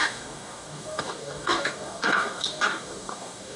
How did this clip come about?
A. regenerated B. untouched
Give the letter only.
A